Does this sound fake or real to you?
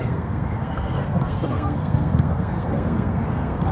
fake